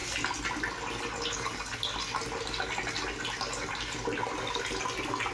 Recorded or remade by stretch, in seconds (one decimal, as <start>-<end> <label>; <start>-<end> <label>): 0.0-5.3 recorded